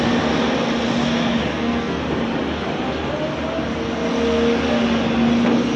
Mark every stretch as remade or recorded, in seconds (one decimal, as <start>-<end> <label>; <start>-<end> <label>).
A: 0.0-1.5 recorded; 1.5-2.0 remade; 2.0-5.8 recorded